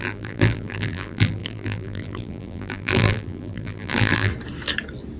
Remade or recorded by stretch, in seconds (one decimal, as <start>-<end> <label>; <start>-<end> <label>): 0.0-4.3 remade; 4.3-5.2 recorded